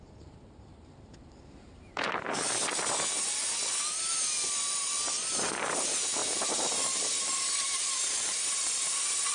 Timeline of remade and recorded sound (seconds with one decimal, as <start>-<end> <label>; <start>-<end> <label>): 0.0-2.6 remade; 2.6-5.4 recorded; 5.4-9.3 remade

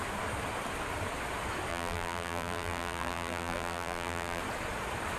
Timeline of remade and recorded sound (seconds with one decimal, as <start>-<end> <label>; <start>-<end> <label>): 0.0-1.7 recorded; 1.7-4.4 remade; 4.4-5.2 recorded